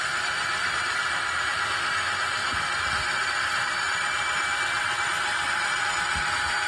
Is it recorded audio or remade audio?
remade